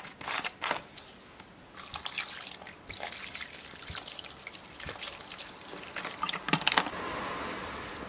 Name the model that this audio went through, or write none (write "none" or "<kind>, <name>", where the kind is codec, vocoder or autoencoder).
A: none